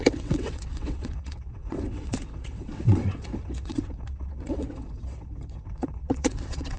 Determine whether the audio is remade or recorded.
remade